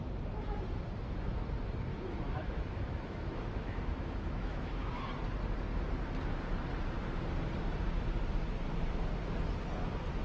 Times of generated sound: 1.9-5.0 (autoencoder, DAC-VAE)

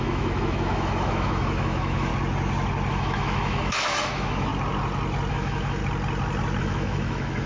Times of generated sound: 0.0-2.1 (autoencoder, DAC-VAE); 2.9-4.5; 5.3-5.8; 6.6-7.5

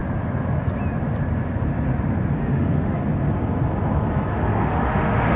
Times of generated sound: 2.4-3.0 (autoencoder, DAC-VAE); 4.3-5.4

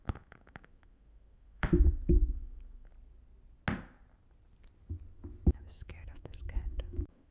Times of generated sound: 0.0-2.9 (autoencoder, DAC-VAE); 5.5-7.3

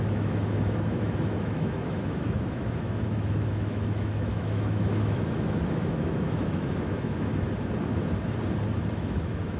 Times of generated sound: 0.0-7.3 (autoencoder, DAC-VAE); 8.9-9.6

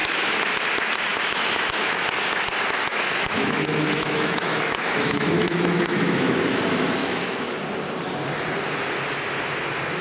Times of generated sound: 0.0-0.5 (autoencoder, DAC-VAE); 1.1-2.2; 2.9-6.6; 7.0-7.6